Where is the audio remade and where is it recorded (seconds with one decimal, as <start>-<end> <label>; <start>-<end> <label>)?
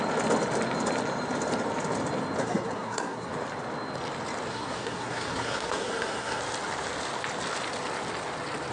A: 0.0-2.4 recorded; 2.4-3.3 remade; 3.3-4.5 recorded; 4.5-6.4 remade; 6.4-8.7 recorded